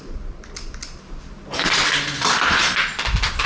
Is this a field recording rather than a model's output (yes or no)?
yes